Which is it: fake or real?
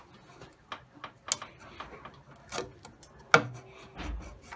real